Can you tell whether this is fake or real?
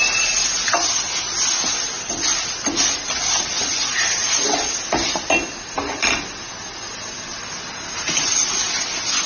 real